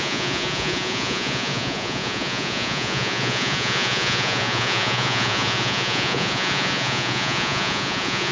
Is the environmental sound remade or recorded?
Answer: remade